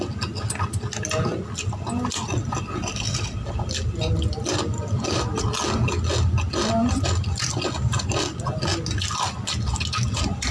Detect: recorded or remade recorded